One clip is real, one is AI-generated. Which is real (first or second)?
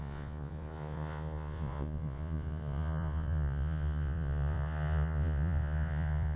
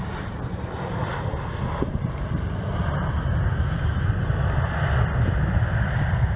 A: second